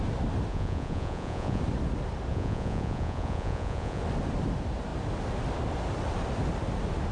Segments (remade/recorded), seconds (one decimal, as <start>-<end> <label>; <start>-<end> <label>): 0.0-0.5 recorded; 0.5-1.6 remade; 1.6-2.3 recorded; 2.3-4.0 remade; 4.0-7.1 recorded

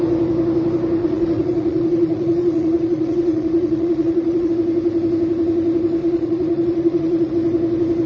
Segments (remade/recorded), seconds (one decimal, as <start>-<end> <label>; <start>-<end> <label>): 0.0-1.0 recorded; 1.0-4.5 remade; 4.5-6.0 recorded; 6.0-7.3 remade; 7.3-8.1 recorded

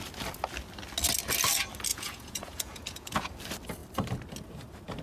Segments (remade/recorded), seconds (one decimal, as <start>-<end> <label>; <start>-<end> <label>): 0.0-1.9 recorded; 1.9-3.3 remade; 3.3-5.0 recorded

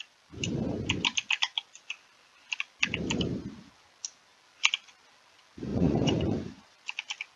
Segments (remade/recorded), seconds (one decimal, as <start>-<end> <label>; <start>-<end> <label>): 0.0-5.7 recorded; 5.7-6.8 remade; 6.8-7.4 recorded

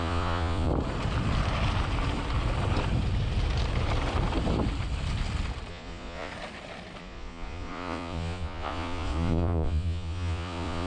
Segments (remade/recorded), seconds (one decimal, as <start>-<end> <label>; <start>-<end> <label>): 0.0-0.7 remade; 0.7-5.7 recorded; 5.7-6.3 remade; 6.3-7.0 recorded; 7.0-10.9 remade

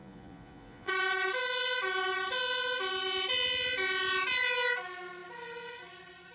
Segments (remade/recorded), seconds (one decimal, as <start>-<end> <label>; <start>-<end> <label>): 0.0-0.9 remade; 0.9-6.3 recorded

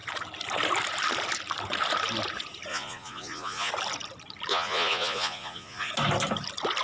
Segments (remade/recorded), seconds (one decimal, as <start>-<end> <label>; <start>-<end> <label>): 0.0-2.7 recorded; 2.7-3.7 remade; 3.7-4.5 recorded; 4.5-5.9 remade; 5.9-6.8 recorded

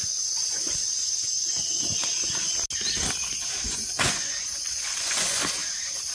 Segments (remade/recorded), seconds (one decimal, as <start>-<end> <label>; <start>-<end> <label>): 0.0-1.9 remade; 1.9-3.3 recorded; 3.3-6.1 remade